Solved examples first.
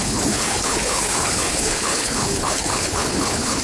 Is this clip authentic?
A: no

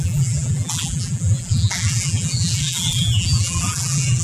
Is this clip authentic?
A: no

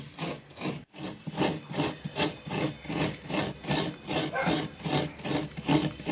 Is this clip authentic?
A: yes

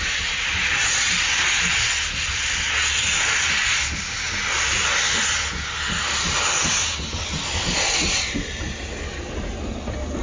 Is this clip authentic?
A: yes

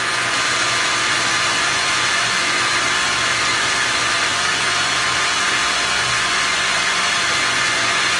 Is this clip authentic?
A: no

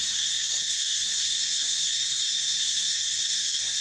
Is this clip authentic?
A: no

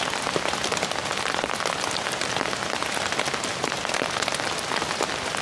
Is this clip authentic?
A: yes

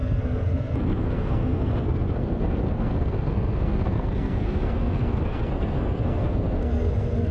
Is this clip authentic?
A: no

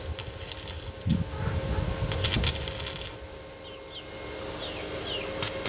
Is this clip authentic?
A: yes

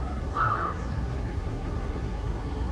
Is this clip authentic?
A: no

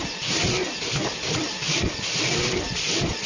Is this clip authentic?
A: yes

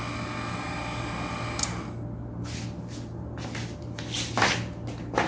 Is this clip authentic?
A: yes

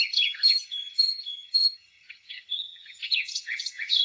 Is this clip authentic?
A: no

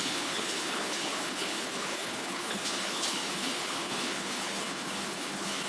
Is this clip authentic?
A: no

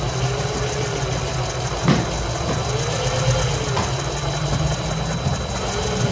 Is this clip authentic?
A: yes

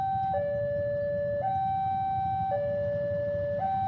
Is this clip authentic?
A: yes